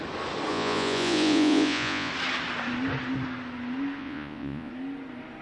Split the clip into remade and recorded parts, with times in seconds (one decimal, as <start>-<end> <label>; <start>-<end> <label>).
0.0-0.5 recorded; 0.5-2.1 remade; 2.1-4.0 recorded; 4.0-4.7 remade; 4.7-5.4 recorded